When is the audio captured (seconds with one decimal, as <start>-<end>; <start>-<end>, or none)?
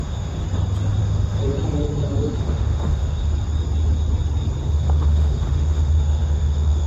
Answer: 0.4-1.0; 1.4-2.4; 3.3-4.6